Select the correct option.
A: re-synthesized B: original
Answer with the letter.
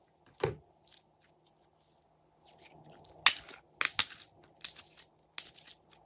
B